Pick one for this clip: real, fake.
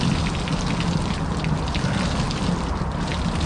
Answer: real